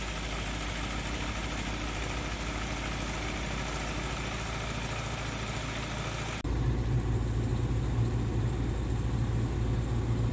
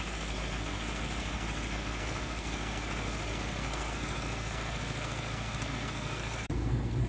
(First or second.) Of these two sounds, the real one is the first